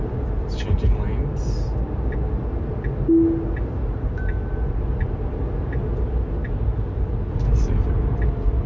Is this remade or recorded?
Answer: recorded